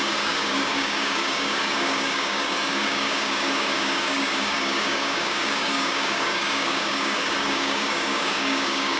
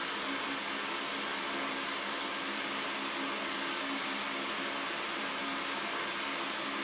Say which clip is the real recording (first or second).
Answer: second